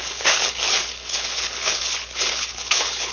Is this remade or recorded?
remade